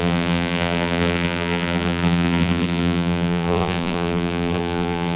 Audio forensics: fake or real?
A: fake